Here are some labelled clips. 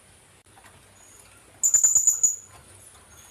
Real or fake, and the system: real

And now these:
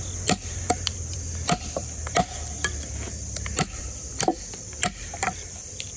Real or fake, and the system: fake, vocoder, BigVGAN v2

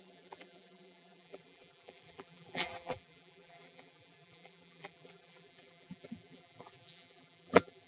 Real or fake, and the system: fake, vocoder, BigVGAN v2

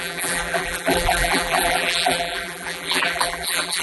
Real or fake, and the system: fake, vocoder, BigVGAN v2